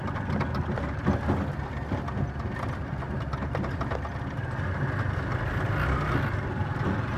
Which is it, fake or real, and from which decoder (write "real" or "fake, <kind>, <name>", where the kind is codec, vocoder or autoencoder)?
real